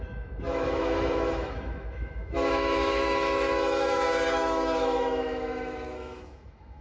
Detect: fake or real fake